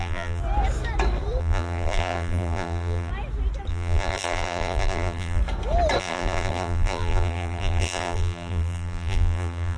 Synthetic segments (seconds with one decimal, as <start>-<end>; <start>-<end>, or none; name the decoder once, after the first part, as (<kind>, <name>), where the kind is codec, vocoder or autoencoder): 0.0-0.4 (vocoder, BigVGAN v2); 1.4-3.1; 3.7-5.4; 6.0-9.8

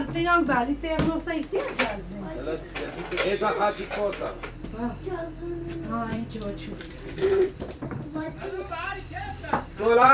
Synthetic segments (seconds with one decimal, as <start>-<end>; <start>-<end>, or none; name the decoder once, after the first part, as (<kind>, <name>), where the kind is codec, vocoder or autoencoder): 6.1-10.1 (vocoder, BigVGAN v2)

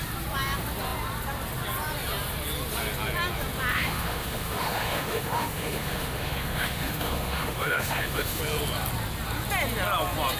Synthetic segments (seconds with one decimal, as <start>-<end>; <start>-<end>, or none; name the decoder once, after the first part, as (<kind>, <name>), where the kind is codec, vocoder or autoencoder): 3.7-8.4 (autoencoder, DAC-VAE)

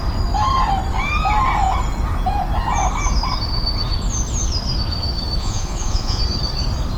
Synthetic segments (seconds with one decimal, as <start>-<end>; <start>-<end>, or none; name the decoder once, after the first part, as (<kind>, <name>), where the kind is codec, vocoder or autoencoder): 5.4-6.2 (vocoder, Vocos)

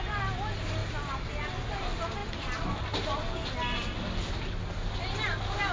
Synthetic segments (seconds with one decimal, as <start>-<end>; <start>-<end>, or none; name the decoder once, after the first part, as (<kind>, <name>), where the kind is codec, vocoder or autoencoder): none

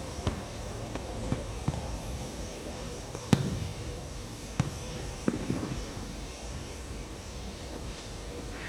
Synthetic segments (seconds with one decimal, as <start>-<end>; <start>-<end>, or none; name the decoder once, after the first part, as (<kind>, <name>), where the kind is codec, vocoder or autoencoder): 0.0-8.7 (codec, DAC)

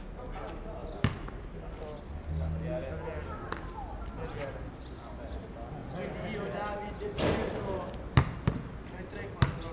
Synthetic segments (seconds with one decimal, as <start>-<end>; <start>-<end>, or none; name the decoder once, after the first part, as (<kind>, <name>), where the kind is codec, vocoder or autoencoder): none